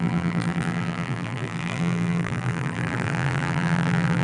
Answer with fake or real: fake